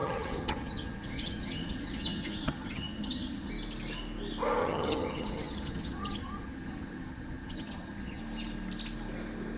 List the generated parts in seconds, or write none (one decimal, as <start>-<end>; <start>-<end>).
0.0-3.5; 4.6-8.2